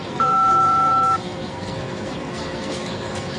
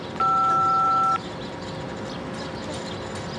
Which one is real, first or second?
second